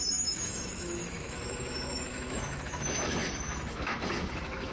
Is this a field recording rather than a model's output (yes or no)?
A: no